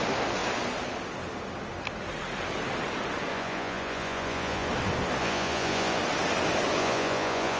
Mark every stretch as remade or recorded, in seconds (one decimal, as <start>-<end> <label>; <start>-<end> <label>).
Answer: 0.0-3.3 recorded; 3.3-4.7 remade; 4.7-5.2 recorded; 5.2-6.0 remade; 6.0-6.8 recorded; 6.8-7.6 remade